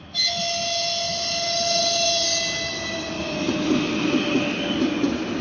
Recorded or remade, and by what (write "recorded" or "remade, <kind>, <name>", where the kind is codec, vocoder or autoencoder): recorded